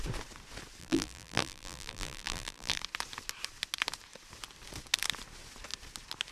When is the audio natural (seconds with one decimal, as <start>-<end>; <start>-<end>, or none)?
0.0-0.8; 2.8-6.3